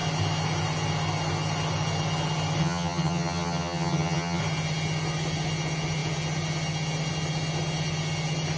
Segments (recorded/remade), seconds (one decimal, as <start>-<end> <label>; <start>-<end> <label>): 0.0-2.6 recorded; 2.6-4.4 remade; 4.4-8.6 recorded